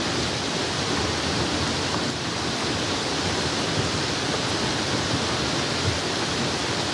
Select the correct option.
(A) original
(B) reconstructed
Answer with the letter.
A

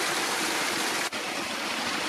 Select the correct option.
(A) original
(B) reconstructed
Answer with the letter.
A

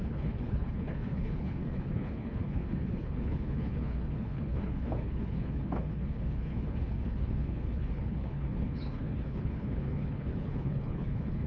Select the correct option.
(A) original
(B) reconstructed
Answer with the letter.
B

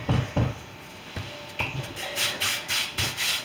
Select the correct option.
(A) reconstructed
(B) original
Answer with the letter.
B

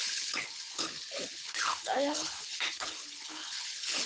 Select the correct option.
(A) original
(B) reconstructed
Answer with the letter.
B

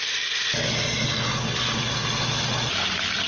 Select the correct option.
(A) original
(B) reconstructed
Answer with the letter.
A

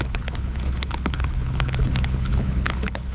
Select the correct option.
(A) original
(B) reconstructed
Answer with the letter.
B